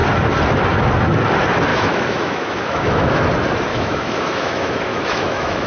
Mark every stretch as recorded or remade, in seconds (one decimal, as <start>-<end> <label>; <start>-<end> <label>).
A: 0.0-1.7 recorded; 1.7-3.2 remade; 3.2-3.7 recorded; 3.7-5.7 remade